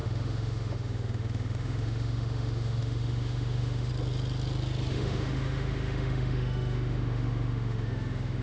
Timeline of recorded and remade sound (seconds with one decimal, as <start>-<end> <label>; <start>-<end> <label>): 0.0-3.9 remade; 3.9-4.9 recorded; 4.9-8.4 remade